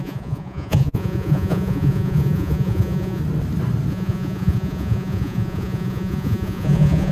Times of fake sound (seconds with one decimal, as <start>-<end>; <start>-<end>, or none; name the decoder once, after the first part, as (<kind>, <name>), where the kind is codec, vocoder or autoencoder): 0.0-3.2 (vocoder, Vocos); 3.9-7.1